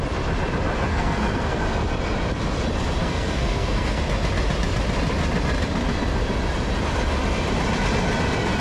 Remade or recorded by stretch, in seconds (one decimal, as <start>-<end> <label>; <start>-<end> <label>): 0.0-0.9 recorded; 0.9-1.6 remade; 1.6-3.0 recorded; 3.0-4.0 remade; 4.0-8.6 recorded

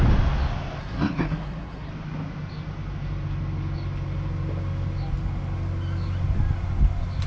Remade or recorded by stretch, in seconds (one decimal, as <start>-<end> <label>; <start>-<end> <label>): 0.0-0.8 recorded; 0.8-1.9 remade; 1.9-7.3 recorded